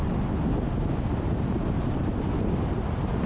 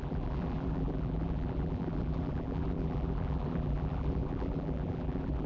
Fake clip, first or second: second